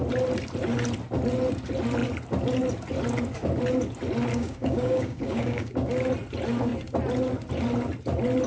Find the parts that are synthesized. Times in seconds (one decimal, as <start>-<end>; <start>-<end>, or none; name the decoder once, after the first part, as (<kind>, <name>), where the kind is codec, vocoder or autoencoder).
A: 4.3-5.7 (codec, DAC)